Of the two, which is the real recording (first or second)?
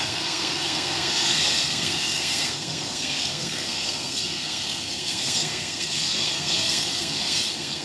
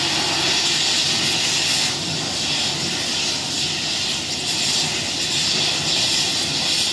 second